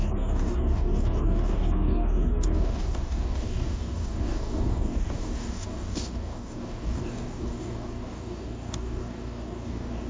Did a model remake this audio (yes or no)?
yes